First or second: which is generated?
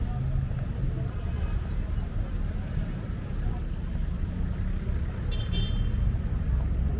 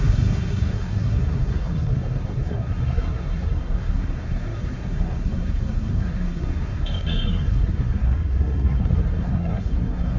second